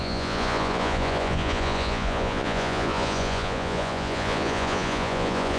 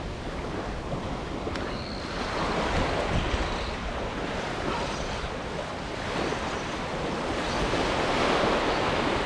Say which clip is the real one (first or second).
second